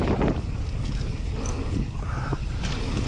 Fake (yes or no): no